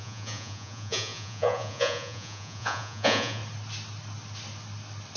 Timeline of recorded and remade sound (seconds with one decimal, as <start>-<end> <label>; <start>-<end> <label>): 0.0-3.4 remade; 3.4-5.2 recorded